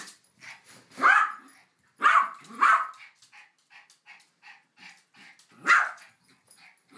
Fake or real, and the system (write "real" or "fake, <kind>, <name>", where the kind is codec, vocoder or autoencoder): real